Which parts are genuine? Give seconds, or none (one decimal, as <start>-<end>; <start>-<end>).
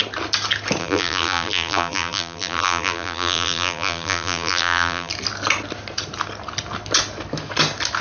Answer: 0.0-0.8; 5.1-8.0